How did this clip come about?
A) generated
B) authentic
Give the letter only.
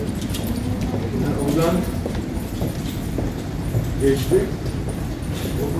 B